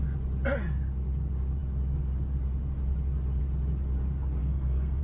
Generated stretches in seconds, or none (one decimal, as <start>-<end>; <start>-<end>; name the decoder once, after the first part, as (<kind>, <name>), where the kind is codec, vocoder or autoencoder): 4.4-5.0 (codec, SNAC)